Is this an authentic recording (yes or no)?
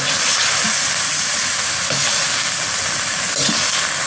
yes